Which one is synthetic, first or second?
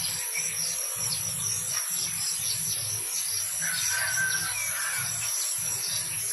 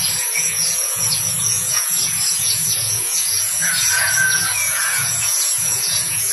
second